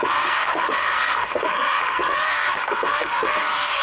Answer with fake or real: fake